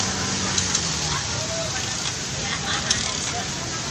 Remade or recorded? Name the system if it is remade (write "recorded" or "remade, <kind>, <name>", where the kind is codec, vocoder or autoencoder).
recorded